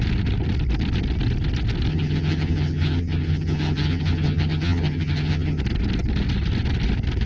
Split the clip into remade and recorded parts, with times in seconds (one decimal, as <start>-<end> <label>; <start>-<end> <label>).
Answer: 0.0-1.9 recorded; 1.9-5.6 remade; 5.6-7.3 recorded